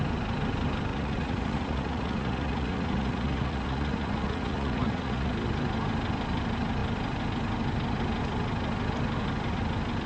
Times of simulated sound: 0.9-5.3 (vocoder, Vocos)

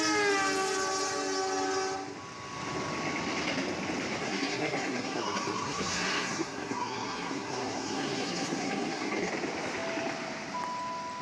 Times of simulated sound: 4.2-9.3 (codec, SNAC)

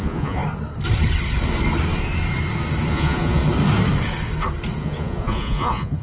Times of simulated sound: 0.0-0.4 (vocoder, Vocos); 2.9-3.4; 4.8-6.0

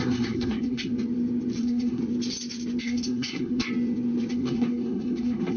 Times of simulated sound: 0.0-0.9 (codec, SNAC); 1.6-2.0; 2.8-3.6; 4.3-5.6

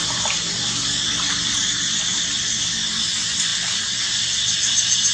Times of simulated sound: none